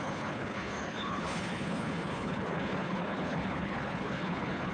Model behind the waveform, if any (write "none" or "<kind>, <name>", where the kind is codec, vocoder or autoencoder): codec, HILCodec